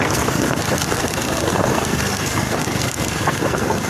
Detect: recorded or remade remade